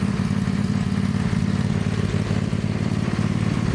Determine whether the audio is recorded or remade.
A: remade